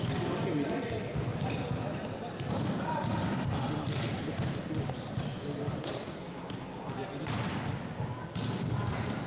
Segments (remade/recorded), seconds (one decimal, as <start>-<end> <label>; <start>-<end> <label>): 0.0-6.2 recorded; 6.2-6.9 remade; 6.9-9.3 recorded